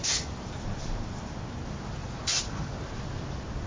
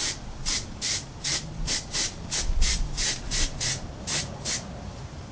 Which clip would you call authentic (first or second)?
first